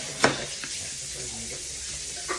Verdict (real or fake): real